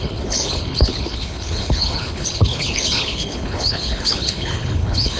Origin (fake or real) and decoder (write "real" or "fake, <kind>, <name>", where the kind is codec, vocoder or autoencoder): fake, codec, HILCodec